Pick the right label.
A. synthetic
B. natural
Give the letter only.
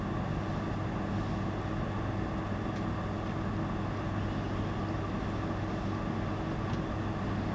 B